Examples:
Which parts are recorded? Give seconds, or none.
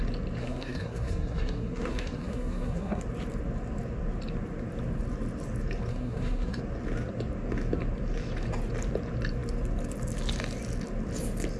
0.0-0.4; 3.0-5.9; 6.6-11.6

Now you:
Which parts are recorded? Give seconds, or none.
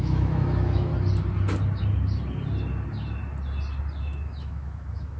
0.9-4.0